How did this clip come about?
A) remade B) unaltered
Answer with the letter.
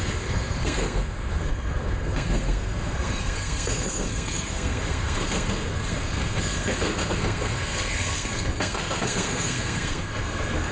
A